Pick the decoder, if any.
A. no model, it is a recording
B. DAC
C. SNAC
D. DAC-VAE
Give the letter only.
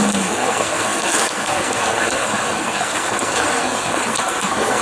C